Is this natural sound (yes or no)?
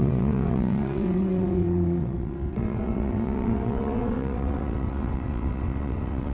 no